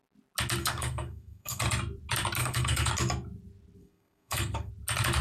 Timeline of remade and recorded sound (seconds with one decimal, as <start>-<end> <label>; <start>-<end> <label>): 0.0-0.6 recorded; 0.6-1.6 remade; 1.6-2.4 recorded; 2.4-2.9 remade; 2.9-3.8 recorded; 3.8-4.7 remade; 4.7-5.2 recorded